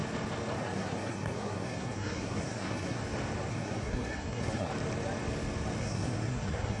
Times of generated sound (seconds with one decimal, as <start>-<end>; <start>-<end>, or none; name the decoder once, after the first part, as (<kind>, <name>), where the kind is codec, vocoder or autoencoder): 0.6-3.0 (codec, SNAC); 3.5-4.7; 5.8-6.8